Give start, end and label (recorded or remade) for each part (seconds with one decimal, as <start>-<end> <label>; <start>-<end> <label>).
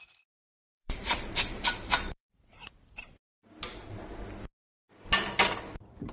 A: 0.0-0.5 recorded; 0.5-3.3 remade; 3.3-6.1 recorded